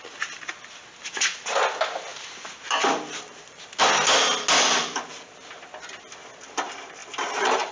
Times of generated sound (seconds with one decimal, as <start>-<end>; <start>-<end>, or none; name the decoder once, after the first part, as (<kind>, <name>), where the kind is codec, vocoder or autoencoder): 2.1-3.8 (vocoder, BigVGAN v2); 4.8-5.5; 7.0-7.7